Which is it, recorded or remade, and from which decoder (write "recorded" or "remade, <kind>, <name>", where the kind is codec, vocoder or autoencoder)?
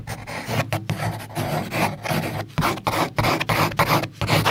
recorded